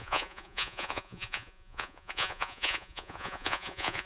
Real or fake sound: fake